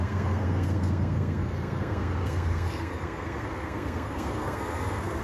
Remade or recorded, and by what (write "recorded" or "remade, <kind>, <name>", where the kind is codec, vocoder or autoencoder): remade, codec, SNAC